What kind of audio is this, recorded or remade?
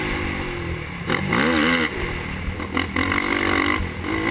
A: recorded